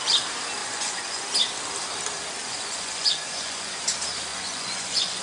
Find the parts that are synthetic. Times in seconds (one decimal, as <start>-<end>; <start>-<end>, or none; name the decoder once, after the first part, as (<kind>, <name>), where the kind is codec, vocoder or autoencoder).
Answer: 0.6-1.2 (vocoder, Vocos); 2.4-3.8; 4.3-5.2